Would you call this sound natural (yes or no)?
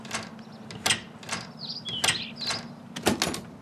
yes